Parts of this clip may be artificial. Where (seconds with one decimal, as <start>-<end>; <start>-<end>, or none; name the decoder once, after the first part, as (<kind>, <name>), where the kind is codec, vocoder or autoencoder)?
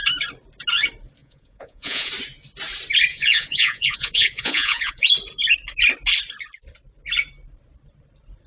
1.2-2.1 (vocoder, Vocos); 3.1-5.1